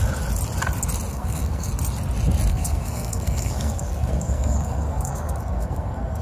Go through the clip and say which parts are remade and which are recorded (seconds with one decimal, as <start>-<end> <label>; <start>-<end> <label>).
0.0-1.1 recorded; 1.1-1.7 remade; 1.7-2.5 recorded; 2.5-6.2 remade